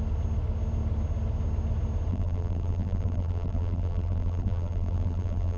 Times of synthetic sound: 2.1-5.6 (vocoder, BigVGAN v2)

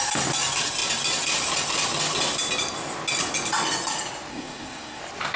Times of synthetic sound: 4.3-5.0 (codec, SNAC)

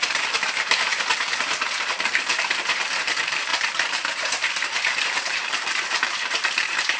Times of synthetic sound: 0.0-7.0 (vocoder, BigVGAN v2)

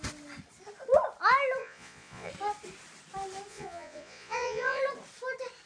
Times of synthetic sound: 1.6-2.3 (vocoder, Vocos); 3.5-4.8

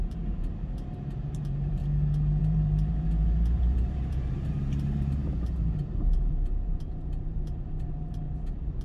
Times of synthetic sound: 0.0-1.8 (vocoder, BigVGAN v2); 2.4-8.8

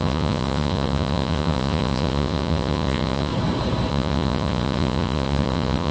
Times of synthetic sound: 0.0-3.3 (vocoder, Vocos); 3.9-5.9

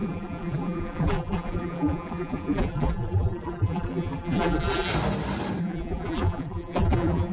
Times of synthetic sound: 0.0-4.9 (vocoder, BigVGAN v2); 5.6-7.3

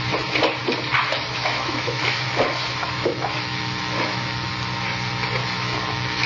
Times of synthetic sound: 1.0-4.5 (autoencoder, DAC-VAE); 5.4-6.3